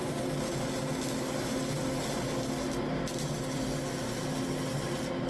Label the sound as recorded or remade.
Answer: recorded